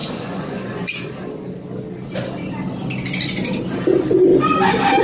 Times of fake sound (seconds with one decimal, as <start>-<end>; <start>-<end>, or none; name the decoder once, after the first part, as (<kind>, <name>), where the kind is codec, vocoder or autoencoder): 0.0-1.1 (vocoder, Vocos)